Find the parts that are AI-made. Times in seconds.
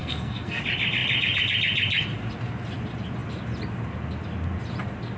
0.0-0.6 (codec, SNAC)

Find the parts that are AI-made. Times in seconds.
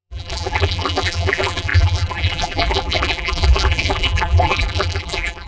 0.0-5.5 (vocoder, BigVGAN v2)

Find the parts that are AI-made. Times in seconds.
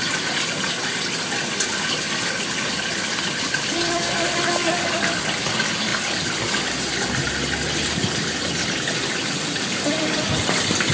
none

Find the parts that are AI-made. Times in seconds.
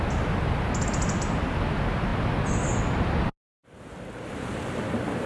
none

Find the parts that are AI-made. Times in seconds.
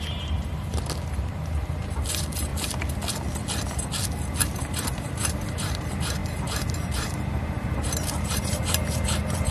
0.0-2.5 (vocoder, BigVGAN v2); 4.4-9.5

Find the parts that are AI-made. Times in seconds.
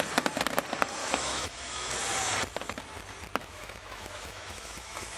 1.0-1.9 (autoencoder, DAC-VAE); 3.4-5.2